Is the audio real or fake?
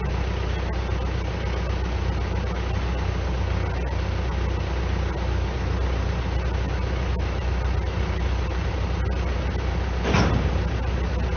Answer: real